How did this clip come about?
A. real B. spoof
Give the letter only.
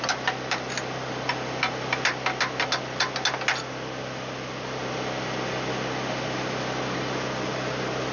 A